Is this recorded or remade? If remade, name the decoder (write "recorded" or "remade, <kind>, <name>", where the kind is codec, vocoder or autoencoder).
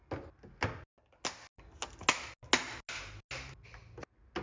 recorded